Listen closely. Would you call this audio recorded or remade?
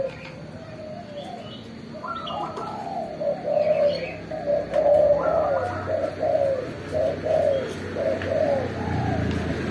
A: recorded